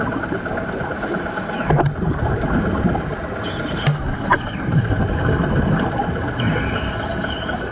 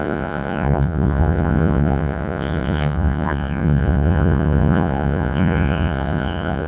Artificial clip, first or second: second